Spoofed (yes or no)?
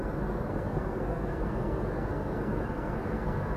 yes